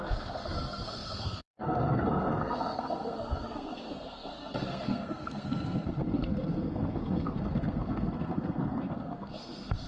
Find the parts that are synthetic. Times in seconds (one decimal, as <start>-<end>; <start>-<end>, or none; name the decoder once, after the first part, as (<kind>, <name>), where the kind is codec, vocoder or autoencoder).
0.0-9.9 (codec, SNAC)